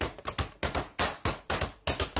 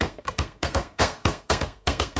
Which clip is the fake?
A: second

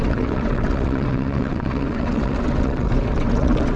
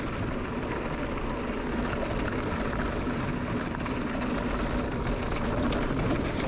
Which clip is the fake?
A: first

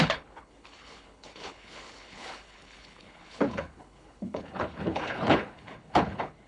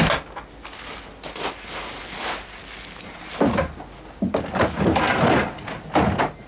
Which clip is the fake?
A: first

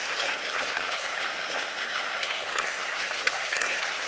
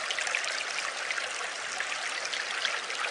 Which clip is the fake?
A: first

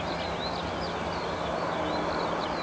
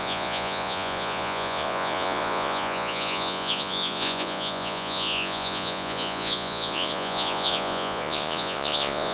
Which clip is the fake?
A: second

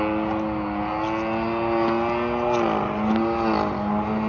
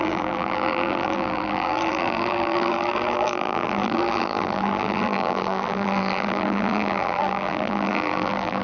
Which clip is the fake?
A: second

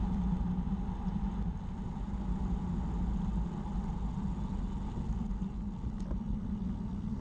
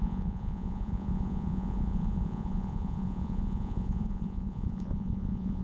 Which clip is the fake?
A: second